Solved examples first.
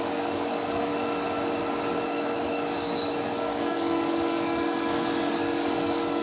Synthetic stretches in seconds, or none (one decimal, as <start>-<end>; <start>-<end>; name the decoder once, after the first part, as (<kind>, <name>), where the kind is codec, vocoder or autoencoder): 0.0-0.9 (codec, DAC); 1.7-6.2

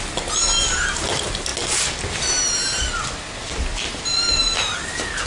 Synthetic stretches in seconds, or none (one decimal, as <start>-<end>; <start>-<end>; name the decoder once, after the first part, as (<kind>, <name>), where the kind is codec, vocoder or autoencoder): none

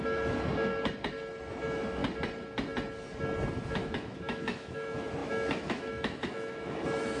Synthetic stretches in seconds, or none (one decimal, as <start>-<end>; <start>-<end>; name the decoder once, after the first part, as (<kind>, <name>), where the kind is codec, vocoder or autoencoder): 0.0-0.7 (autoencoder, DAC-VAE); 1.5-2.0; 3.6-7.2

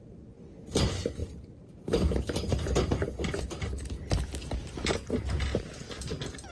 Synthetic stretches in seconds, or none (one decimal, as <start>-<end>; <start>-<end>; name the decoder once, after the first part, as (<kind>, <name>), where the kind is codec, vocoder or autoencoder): none

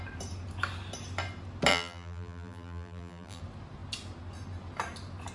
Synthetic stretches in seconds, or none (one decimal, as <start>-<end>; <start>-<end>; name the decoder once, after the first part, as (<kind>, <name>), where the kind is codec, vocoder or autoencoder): 1.7-3.4 (vocoder, BigVGAN v2)

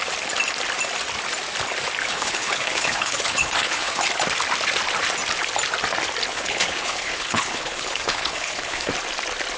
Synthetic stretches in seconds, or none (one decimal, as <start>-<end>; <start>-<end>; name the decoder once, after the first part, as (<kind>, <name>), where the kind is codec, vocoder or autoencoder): 2.0-4.0 (codec, HILCodec); 6.3-8.9